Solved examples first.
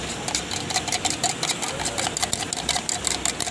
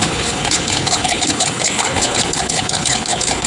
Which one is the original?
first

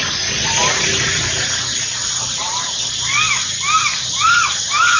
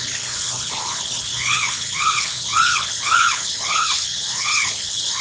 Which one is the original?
first